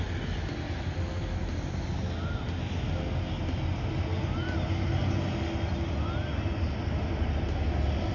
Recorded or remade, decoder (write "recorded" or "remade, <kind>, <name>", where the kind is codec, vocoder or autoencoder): recorded